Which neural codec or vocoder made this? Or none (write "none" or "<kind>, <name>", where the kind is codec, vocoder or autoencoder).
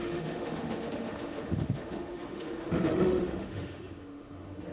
autoencoder, DAC-VAE